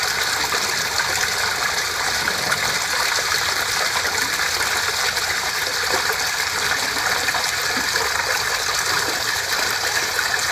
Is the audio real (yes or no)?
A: yes